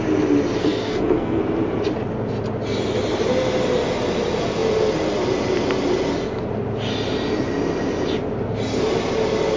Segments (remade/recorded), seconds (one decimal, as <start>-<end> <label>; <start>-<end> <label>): 0.0-0.6 recorded; 0.6-1.4 remade; 1.4-9.6 recorded